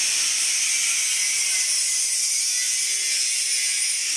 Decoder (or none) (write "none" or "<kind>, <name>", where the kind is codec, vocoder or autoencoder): none